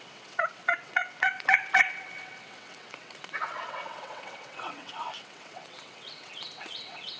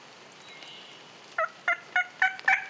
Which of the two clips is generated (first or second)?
first